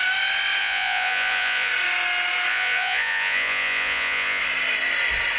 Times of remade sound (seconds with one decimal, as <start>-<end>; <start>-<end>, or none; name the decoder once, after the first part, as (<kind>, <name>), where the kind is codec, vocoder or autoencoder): 0.6-1.7 (vocoder, Vocos); 2.5-4.4